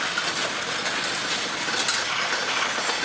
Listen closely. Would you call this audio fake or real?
real